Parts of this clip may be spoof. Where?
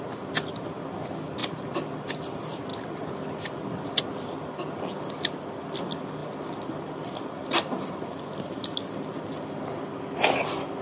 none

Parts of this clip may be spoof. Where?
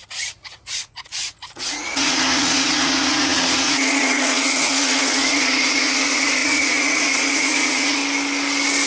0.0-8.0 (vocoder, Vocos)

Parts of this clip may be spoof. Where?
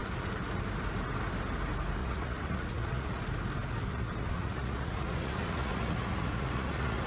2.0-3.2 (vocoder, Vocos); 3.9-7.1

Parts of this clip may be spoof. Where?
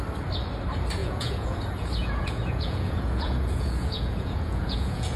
1.0-1.6 (vocoder, Vocos); 2.0-5.2